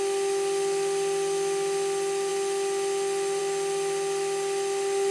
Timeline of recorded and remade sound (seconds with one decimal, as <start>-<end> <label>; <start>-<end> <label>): 0.0-5.1 recorded